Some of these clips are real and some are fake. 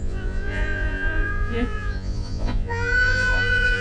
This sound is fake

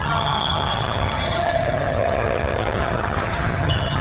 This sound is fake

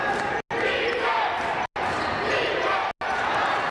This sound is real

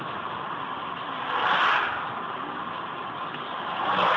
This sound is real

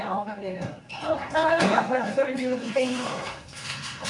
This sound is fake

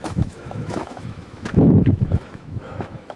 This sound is fake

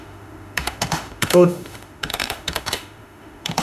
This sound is fake